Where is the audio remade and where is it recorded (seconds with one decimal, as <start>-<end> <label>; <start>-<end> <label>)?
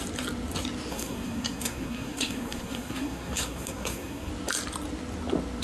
0.0-0.9 recorded; 0.9-4.3 remade; 4.3-5.6 recorded